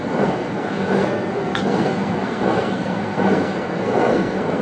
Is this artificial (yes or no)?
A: yes